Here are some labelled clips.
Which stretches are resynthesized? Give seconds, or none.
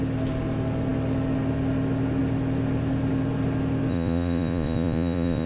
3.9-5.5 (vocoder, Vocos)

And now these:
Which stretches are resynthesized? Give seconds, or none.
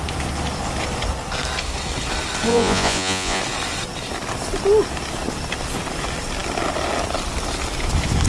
2.5-3.4 (vocoder, Vocos)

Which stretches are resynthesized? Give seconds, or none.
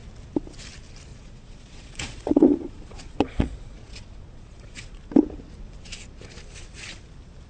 1.1-5.0 (vocoder, Vocos)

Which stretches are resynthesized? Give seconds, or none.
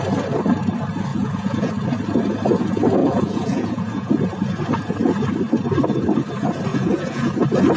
1.1-1.7 (vocoder, Vocos); 3.0-4.1; 6.7-7.3